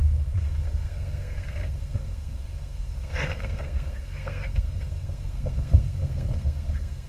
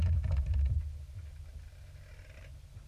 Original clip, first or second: second